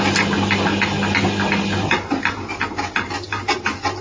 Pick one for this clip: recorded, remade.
recorded